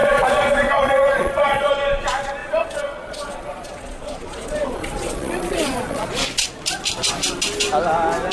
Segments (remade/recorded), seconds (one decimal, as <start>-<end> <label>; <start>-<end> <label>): 0.0-1.7 remade; 1.7-2.4 recorded; 2.4-6.1 remade; 6.1-8.3 recorded